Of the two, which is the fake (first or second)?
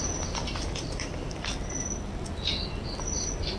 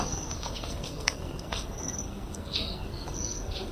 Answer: second